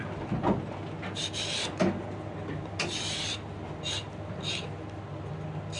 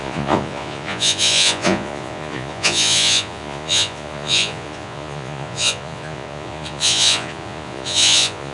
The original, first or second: first